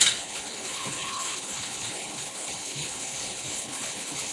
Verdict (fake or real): fake